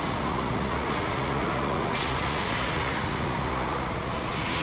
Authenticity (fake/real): fake